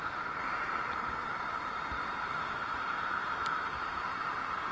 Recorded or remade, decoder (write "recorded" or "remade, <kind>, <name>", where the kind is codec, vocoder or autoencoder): remade, vocoder, BigVGAN v2